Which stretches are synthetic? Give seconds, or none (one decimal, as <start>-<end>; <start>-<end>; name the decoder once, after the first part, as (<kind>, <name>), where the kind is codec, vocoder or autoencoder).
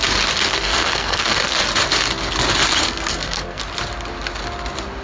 0.5-1.5 (codec, SNAC); 2.8-3.6